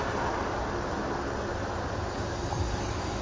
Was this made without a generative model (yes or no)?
yes